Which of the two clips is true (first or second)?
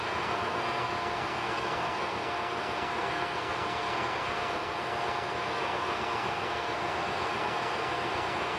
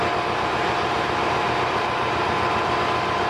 second